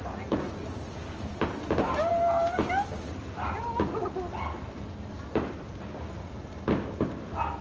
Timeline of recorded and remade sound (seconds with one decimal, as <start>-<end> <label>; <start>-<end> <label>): 0.0-7.6 recorded